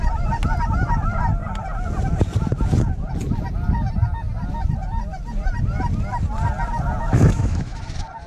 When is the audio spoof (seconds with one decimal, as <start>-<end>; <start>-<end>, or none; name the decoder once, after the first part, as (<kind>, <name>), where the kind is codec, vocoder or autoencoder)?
7.0-7.8 (autoencoder, DAC-VAE)